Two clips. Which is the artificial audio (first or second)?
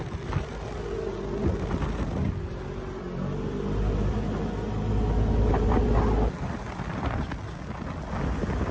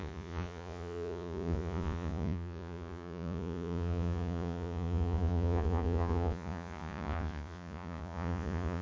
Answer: second